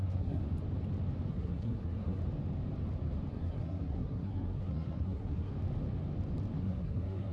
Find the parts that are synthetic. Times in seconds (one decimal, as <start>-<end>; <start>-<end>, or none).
0.0-0.4; 1.3-2.2; 3.3-5.5; 6.6-7.3